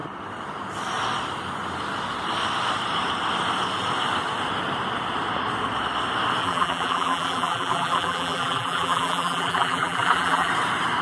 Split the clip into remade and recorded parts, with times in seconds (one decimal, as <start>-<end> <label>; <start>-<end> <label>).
0.0-6.4 recorded; 6.4-10.5 remade; 10.5-11.0 recorded